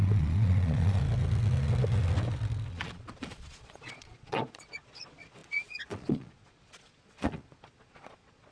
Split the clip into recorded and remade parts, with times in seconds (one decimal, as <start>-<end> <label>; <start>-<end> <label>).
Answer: 0.0-1.0 remade; 1.0-2.7 recorded; 2.7-8.5 remade